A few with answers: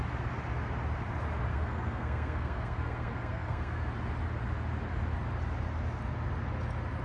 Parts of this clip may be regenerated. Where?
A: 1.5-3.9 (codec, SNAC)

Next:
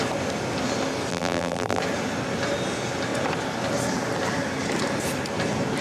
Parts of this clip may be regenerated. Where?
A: 1.1-1.8 (vocoder, BigVGAN v2)